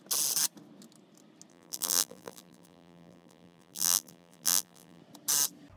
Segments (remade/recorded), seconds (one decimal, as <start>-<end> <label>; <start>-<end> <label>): 0.0-1.5 recorded; 1.5-5.0 remade; 5.0-5.8 recorded